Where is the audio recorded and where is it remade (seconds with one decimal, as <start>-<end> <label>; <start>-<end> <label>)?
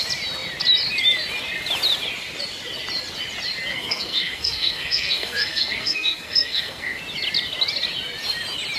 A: 0.0-3.7 recorded; 3.7-7.0 remade; 7.0-8.8 recorded